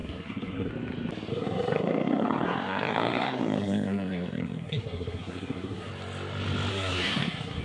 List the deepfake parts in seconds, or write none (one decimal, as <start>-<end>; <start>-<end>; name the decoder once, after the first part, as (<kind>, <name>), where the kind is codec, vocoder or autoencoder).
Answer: 0.0-0.7 (codec, SNAC); 1.3-5.9; 6.7-7.6